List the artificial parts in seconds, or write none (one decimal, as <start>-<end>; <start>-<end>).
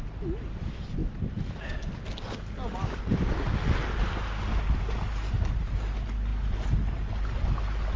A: none